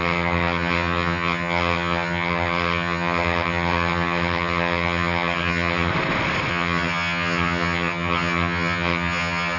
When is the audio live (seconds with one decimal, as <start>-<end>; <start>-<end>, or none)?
5.9-6.5